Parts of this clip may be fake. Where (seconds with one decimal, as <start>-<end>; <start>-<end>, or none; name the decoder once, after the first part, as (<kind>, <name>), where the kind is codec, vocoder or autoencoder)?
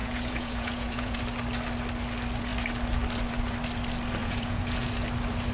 0.0-1.2 (vocoder, Vocos); 4.2-4.9